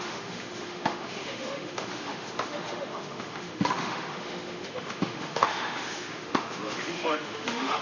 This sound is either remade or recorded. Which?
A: remade